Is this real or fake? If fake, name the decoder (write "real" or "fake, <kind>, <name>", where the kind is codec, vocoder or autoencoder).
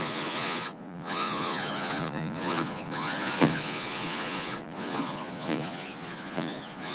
fake, vocoder, Vocos